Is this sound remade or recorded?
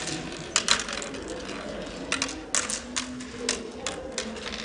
recorded